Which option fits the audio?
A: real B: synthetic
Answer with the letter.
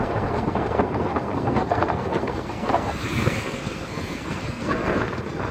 B